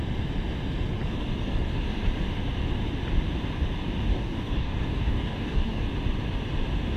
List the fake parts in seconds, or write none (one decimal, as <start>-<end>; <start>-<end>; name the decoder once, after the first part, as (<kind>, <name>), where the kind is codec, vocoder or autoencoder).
4.1-5.8 (codec, DAC)